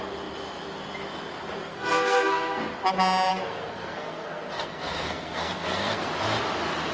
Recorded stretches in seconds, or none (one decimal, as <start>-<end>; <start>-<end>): 0.0-1.6; 2.6-3.3; 6.1-6.9